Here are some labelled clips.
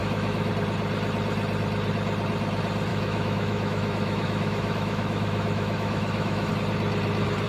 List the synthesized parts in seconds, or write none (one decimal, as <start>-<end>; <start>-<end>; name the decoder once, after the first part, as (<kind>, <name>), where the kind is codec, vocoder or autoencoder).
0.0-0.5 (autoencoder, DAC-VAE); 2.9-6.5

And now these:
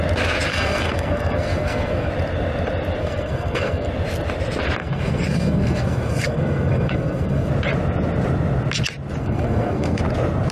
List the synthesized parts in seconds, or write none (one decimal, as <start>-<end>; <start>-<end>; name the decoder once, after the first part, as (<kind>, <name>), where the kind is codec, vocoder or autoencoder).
0.5-2.1 (codec, SNAC); 3.0-3.9; 4.8-7.5; 9.2-10.0

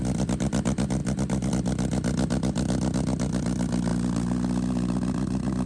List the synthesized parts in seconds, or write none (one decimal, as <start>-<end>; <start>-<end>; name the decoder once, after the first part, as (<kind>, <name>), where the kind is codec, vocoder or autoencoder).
none

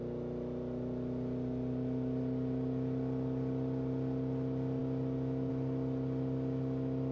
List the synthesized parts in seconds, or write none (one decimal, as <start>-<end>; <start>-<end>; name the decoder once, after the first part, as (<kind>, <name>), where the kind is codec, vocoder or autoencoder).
none

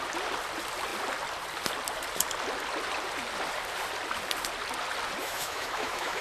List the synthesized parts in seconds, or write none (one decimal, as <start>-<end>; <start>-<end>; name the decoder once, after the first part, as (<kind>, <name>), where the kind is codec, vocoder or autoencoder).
5.2-6.2 (autoencoder, DAC-VAE)

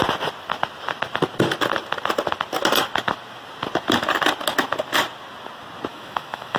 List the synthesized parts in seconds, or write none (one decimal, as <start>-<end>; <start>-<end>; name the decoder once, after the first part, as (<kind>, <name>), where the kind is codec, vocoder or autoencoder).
5.9-6.6 (autoencoder, DAC-VAE)

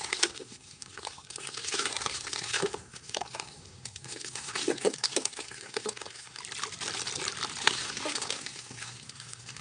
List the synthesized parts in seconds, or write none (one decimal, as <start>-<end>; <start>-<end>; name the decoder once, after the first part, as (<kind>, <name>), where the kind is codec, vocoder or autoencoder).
0.0-6.4 (codec, SNAC); 7.6-9.6

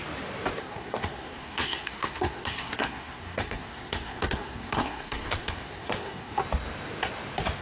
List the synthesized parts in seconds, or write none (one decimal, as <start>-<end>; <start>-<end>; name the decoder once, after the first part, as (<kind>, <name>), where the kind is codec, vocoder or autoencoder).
0.6-6.4 (codec, SNAC)